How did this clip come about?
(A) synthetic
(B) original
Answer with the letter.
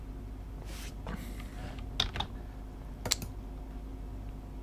B